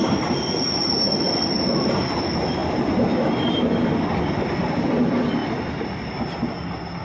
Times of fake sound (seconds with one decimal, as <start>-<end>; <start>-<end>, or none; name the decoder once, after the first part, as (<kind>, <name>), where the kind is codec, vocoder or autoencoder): 5.4-6.1 (vocoder, BigVGAN v2)